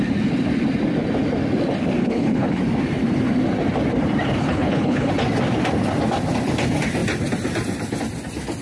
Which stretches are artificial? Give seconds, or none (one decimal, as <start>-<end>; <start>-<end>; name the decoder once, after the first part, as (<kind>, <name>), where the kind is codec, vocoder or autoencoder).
2.0-2.6 (codec, HILCodec); 4.4-5.1